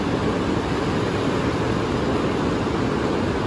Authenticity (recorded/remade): recorded